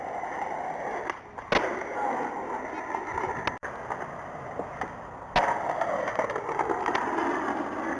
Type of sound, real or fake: real